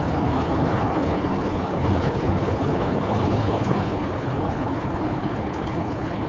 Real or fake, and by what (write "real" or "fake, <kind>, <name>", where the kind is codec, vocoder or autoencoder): fake, codec, HILCodec